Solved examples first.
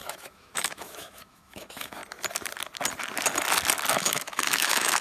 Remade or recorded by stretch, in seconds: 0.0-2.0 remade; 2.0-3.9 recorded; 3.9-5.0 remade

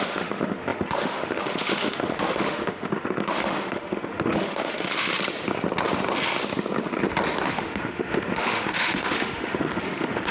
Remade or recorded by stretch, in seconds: 0.0-5.1 remade; 5.1-7.5 recorded; 7.5-10.3 remade

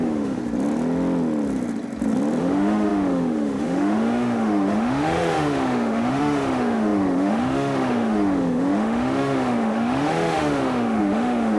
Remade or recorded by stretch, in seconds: 0.0-0.4 remade; 0.4-2.4 recorded; 2.4-11.6 remade

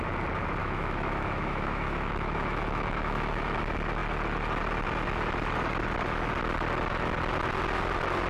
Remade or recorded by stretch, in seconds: 0.0-0.6 recorded; 0.6-3.6 remade; 3.6-8.3 recorded

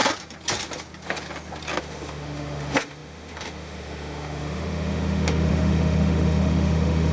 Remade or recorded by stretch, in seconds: 0.0-1.8 recorded; 1.8-7.1 remade